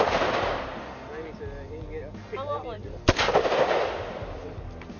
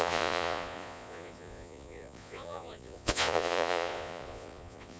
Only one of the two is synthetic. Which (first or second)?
second